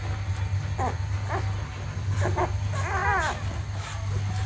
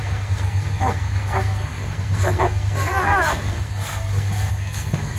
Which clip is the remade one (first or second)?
second